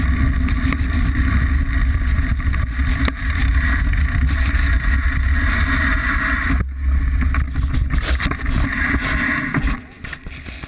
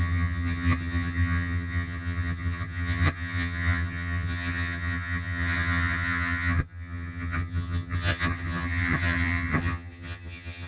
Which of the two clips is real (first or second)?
first